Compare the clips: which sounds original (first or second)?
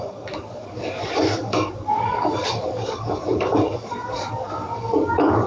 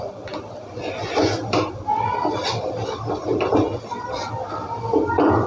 second